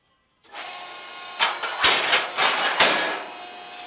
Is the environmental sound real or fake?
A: real